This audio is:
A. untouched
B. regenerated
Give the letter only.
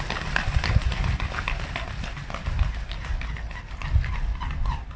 A